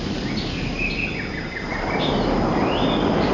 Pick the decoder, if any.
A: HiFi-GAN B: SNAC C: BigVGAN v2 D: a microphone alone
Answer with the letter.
D